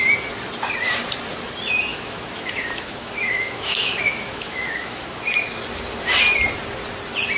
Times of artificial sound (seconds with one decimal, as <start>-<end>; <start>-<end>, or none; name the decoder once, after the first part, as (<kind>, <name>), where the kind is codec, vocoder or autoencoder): 1.9-5.2 (autoencoder, DAC-VAE)